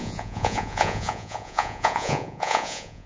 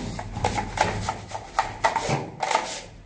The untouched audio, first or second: second